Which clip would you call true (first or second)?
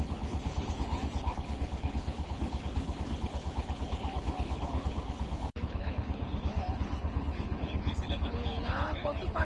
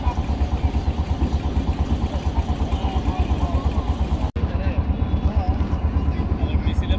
second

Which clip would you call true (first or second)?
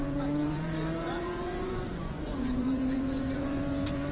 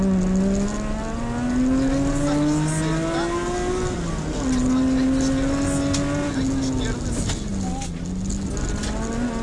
second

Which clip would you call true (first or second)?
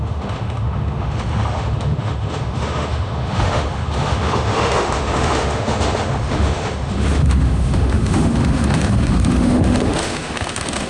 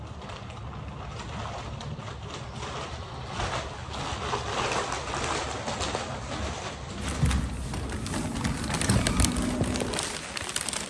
second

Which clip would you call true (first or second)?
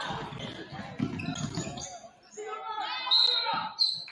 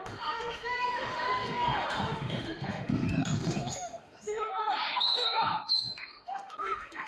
first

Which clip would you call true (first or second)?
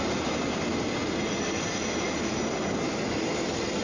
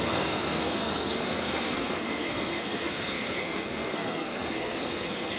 first